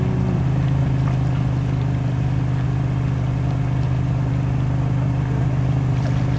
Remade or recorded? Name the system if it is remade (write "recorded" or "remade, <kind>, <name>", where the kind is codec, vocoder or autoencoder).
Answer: recorded